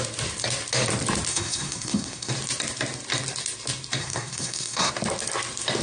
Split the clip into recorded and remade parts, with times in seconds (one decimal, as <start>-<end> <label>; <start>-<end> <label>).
0.0-1.3 recorded; 1.3-2.3 remade; 2.3-4.0 recorded; 4.0-4.9 remade; 4.9-5.8 recorded